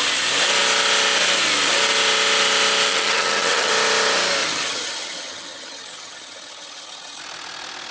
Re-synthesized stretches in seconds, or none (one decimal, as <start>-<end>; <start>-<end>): 2.9-3.7; 4.4-7.2